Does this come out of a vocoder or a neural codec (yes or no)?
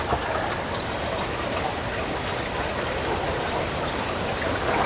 yes